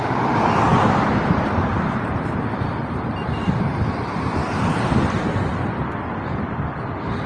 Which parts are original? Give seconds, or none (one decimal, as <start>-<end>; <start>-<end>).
0.0-0.7; 5.1-7.3